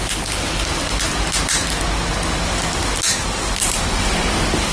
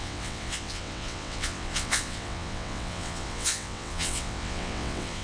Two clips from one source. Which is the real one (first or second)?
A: first